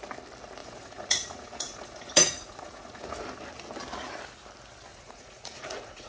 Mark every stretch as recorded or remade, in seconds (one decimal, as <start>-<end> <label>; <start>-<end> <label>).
0.0-0.6 recorded; 0.6-3.1 remade; 3.1-4.9 recorded; 4.9-6.1 remade